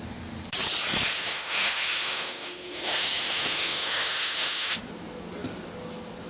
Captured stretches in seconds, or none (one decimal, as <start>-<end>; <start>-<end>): 0.0-1.1; 4.9-6.3